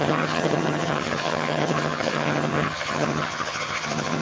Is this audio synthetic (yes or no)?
yes